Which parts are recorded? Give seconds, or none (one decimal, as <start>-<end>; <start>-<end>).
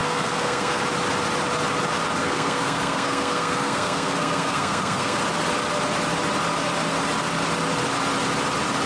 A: 0.8-2.2; 5.2-8.9